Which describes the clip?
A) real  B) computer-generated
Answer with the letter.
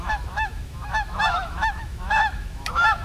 B